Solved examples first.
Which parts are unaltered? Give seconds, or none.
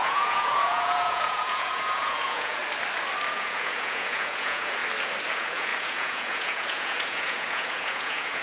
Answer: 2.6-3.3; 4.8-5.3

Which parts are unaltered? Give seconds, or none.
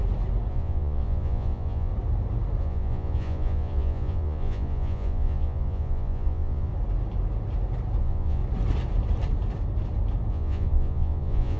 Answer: 0.0-0.5; 1.9-2.6; 6.7-8.0; 8.4-10.3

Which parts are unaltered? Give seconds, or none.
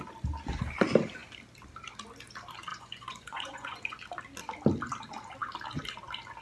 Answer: 0.0-2.7; 4.0-6.4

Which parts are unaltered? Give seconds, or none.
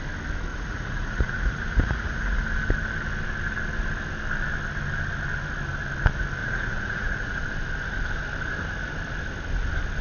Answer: 0.0-0.5; 2.4-6.4; 7.4-10.0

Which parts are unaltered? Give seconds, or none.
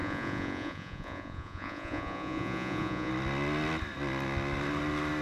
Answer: 3.1-5.2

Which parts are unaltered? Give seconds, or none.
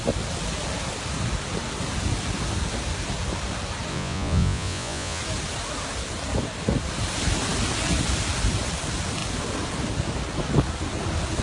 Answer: 0.0-3.9; 5.2-11.4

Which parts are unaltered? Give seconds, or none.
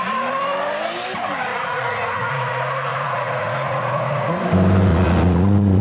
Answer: 0.0-1.5; 2.5-2.9; 4.4-4.9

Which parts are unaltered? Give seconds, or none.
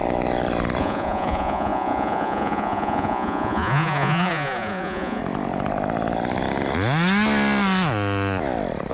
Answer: 0.0-0.8; 5.2-8.9